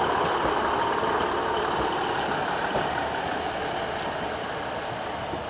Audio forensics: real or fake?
real